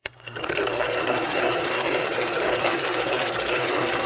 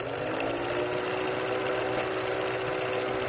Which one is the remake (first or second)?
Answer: first